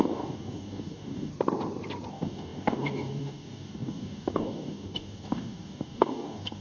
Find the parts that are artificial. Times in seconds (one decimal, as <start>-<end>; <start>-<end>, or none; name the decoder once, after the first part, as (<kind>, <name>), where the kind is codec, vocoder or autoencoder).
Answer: 0.0-1.3 (codec, DAC); 2.1-6.6